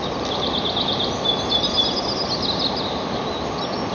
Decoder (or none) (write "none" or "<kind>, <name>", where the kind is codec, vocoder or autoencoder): none